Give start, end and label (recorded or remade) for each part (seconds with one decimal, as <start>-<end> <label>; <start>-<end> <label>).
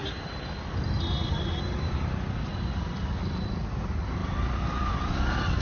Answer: 0.0-4.2 recorded; 4.2-5.0 remade; 5.0-5.6 recorded